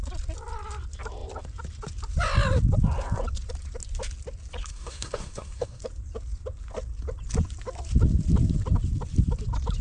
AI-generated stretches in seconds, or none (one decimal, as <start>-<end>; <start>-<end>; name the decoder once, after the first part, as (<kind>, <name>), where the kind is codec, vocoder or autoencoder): 4.6-5.8 (codec, SNAC)